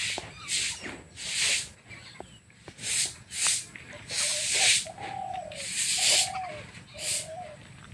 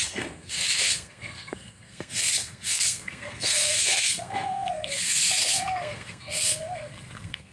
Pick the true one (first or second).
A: first